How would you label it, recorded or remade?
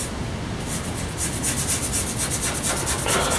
recorded